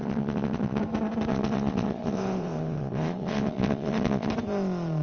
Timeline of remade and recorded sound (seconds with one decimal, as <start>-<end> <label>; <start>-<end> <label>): 0.0-0.8 remade; 0.8-1.3 recorded; 1.3-4.3 remade; 4.3-5.0 recorded